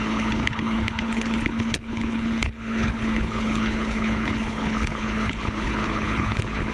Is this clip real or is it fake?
fake